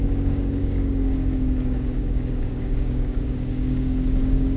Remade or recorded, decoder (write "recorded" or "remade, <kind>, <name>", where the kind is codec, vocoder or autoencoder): remade, codec, DAC